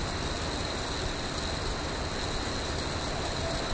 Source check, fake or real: real